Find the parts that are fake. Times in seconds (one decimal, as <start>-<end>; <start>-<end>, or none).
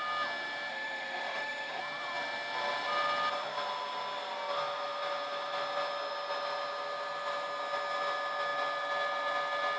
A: 0.7-1.8